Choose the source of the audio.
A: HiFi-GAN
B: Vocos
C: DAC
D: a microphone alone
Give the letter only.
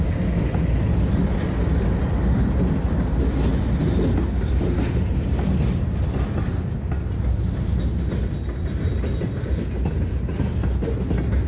D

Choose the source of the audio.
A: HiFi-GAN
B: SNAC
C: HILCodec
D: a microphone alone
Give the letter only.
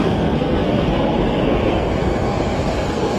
B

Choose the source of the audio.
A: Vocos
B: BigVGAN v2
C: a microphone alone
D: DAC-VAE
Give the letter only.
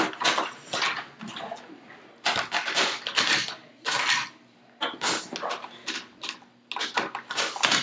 C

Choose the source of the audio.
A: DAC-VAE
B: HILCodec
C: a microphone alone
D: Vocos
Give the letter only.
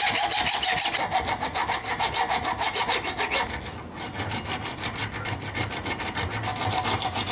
C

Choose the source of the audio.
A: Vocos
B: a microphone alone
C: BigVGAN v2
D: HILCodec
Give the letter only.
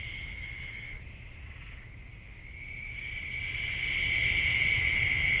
B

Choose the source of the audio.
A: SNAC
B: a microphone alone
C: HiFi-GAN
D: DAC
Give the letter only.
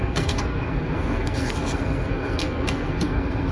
A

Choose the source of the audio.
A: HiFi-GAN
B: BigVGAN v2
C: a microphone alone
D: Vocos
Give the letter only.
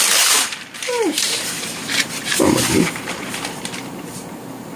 B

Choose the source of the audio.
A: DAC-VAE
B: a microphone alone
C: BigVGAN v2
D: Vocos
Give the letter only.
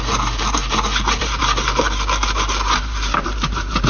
C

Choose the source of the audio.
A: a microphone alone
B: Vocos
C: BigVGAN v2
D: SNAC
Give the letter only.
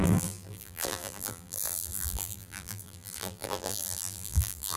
C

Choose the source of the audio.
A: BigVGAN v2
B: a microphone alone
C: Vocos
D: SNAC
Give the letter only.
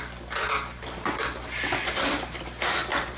B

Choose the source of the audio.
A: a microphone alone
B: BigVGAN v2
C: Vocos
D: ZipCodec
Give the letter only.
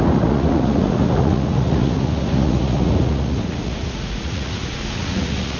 C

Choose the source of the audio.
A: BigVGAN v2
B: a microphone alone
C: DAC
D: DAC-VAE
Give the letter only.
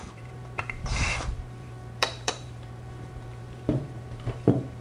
A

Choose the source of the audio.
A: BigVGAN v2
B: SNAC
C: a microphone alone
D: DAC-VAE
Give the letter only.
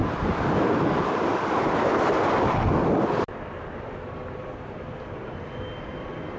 C